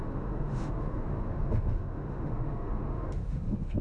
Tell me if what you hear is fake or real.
fake